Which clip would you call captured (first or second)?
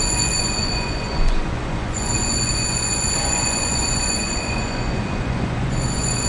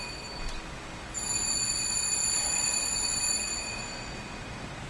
second